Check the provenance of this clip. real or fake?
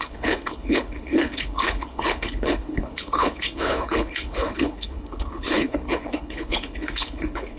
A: fake